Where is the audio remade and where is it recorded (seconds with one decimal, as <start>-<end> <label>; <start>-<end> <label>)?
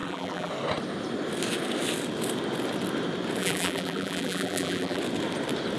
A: 0.0-0.5 remade; 0.5-3.4 recorded; 3.4-5.0 remade; 5.0-5.8 recorded